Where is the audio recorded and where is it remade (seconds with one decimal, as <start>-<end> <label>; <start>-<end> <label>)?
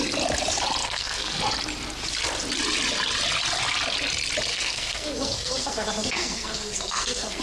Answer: 0.0-0.8 recorded; 0.8-1.4 remade; 1.4-4.5 recorded; 4.5-7.4 remade